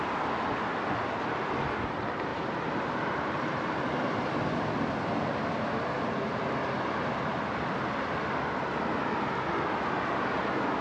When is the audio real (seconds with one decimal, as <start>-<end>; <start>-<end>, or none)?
0.0-2.3; 4.2-10.8